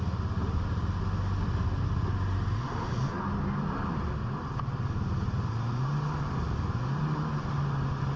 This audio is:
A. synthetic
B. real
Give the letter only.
B